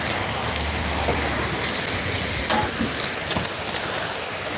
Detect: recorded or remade recorded